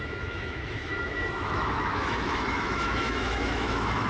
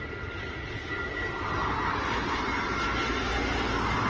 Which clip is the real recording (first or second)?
second